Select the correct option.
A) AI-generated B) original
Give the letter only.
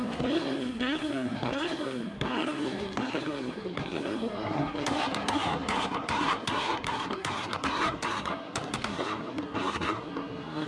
A